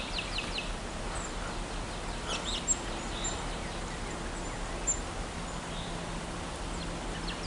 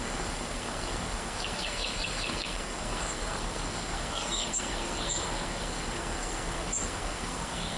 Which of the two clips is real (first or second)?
first